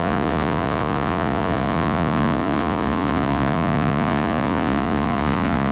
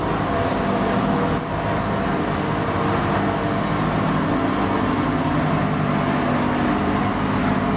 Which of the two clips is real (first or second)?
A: second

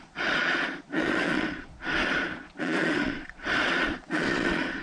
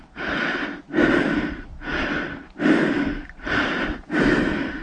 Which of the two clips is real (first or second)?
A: second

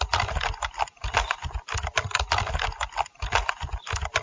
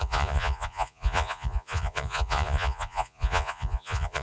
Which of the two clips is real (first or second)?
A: first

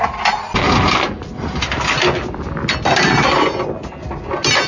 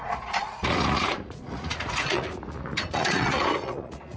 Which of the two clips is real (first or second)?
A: first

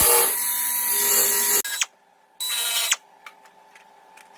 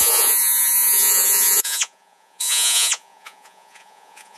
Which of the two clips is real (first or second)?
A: first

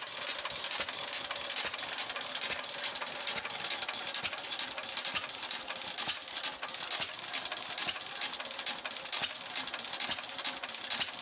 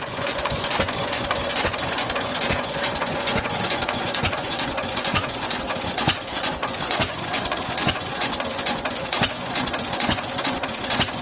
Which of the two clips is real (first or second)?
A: first